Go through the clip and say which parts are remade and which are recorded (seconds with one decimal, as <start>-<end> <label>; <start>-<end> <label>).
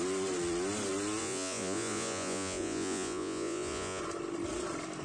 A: 0.0-1.2 recorded; 1.2-4.0 remade; 4.0-5.0 recorded